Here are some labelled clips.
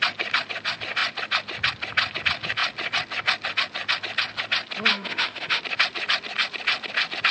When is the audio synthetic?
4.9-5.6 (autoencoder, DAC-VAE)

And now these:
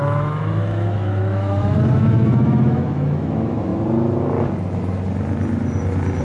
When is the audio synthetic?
0.0-3.7 (autoencoder, DAC-VAE)

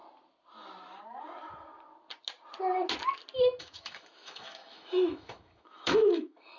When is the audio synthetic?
3.6-6.6 (autoencoder, DAC-VAE)

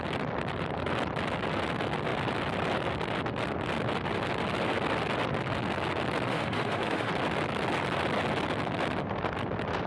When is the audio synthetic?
6.3-7.1 (autoencoder, DAC-VAE)